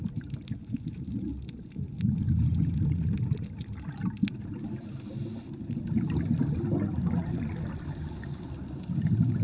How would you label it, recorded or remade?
recorded